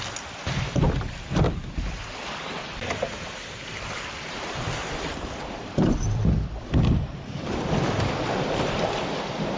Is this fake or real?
fake